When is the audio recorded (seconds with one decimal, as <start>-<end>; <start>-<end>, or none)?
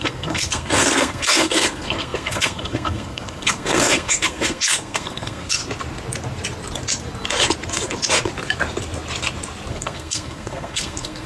5.6-9.7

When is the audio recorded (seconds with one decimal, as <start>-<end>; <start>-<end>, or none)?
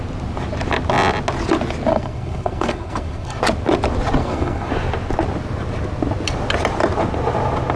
0.0-1.9; 3.4-4.2; 4.7-7.8